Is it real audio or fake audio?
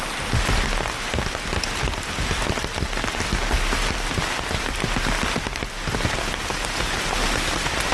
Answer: real